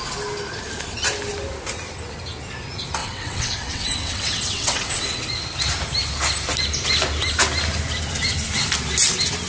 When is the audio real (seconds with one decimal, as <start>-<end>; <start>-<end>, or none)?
0.0-3.0; 5.2-9.5